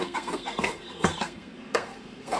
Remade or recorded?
remade